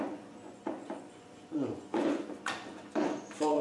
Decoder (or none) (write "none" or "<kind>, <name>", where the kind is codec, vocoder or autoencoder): vocoder, Vocos